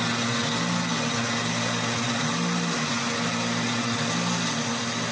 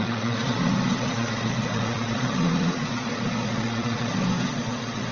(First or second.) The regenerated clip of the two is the second